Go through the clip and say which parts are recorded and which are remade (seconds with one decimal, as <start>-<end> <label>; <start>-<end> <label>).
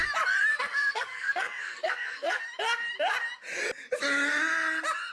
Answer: 0.0-0.5 recorded; 0.5-2.4 remade; 2.4-5.1 recorded